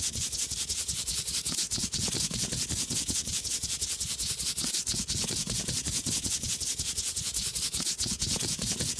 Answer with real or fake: fake